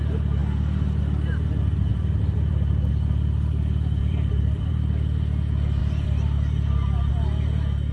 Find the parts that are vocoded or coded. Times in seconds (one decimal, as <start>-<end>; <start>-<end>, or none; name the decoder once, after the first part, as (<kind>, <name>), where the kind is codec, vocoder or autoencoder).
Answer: 1.9-2.9 (vocoder, BigVGAN v2); 4.0-4.7; 5.8-7.1